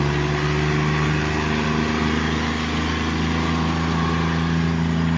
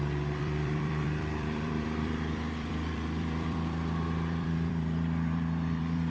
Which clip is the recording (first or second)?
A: first